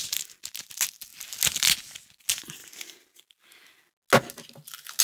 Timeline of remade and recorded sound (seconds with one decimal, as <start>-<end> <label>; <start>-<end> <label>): 0.0-5.0 recorded